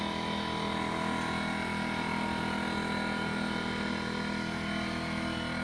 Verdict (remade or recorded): recorded